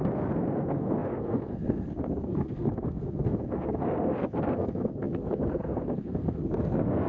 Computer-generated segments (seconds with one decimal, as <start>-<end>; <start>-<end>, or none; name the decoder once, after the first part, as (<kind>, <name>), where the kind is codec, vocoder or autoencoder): 0.0-7.1 (codec, SNAC)